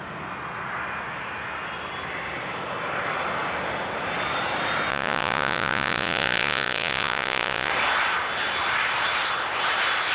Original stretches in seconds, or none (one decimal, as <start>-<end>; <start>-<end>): 0.0-4.9; 7.7-10.1